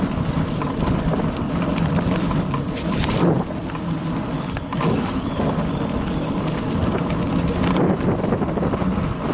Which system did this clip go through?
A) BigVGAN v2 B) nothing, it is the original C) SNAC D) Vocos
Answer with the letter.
B